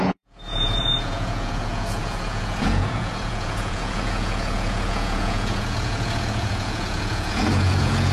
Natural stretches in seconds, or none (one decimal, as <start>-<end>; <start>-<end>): none